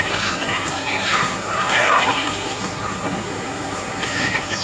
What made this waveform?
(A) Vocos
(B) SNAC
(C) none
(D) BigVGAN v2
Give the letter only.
B